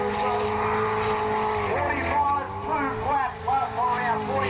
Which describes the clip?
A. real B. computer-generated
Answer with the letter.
A